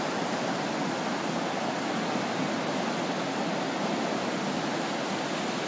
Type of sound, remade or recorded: recorded